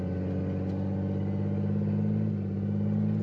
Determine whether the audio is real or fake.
real